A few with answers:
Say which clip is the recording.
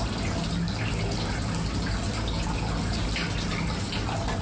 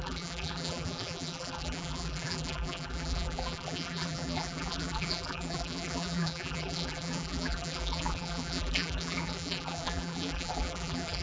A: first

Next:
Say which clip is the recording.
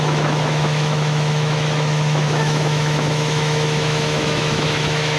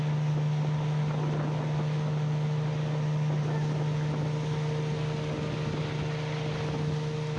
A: second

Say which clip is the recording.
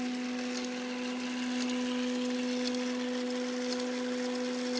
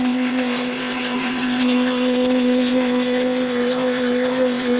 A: first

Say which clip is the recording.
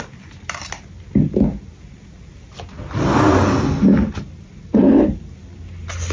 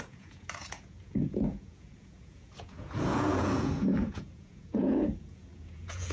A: first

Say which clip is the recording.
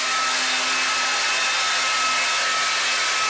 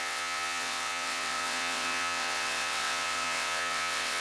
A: first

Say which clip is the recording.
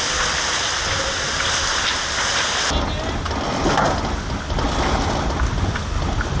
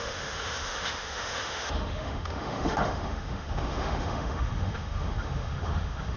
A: first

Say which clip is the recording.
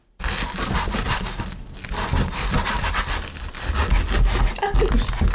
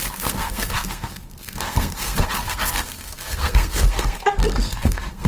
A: first